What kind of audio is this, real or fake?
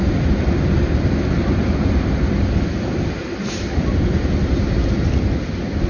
real